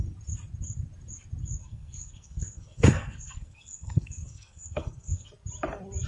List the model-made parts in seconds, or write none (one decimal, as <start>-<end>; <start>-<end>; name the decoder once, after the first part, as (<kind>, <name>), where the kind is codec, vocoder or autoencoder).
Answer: 1.6-5.3 (codec, SNAC)